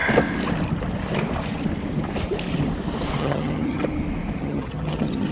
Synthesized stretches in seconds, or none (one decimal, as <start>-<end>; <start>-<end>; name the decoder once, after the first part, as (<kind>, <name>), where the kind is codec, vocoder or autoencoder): 3.2-3.8 (vocoder, HiFi-GAN); 4.4-5.3